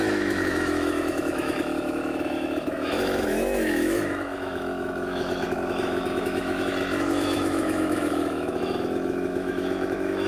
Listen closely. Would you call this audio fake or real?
fake